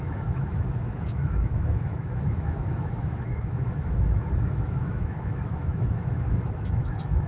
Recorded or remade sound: remade